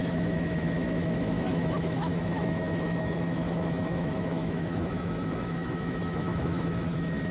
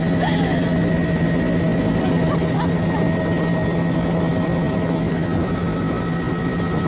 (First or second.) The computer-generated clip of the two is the first